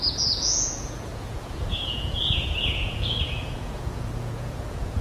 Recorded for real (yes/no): no